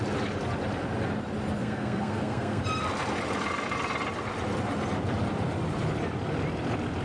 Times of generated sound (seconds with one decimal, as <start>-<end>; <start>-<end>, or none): 1.6-2.6